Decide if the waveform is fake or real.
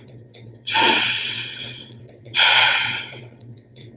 fake